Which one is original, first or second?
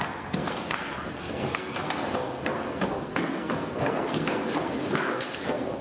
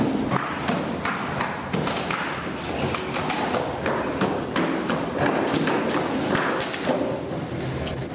second